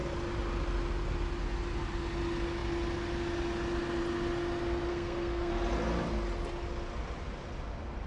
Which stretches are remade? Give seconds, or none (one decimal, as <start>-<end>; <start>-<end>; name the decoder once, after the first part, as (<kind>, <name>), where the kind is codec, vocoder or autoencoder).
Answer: 4.9-5.5 (codec, SNAC)